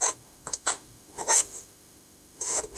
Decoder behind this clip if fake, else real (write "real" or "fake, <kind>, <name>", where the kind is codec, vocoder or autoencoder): fake, autoencoder, DAC-VAE